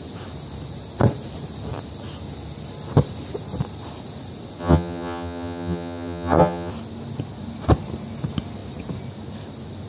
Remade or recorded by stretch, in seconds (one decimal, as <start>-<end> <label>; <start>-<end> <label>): 0.0-4.6 recorded; 4.6-6.7 remade; 6.7-9.9 recorded